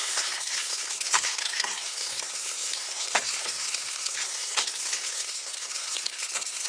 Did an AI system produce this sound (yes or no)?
yes